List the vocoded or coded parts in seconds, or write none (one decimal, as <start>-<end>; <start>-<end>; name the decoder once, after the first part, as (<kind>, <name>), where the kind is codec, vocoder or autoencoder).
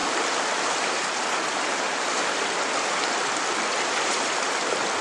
none